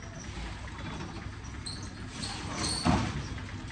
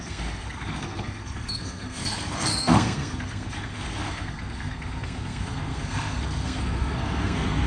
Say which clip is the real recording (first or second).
first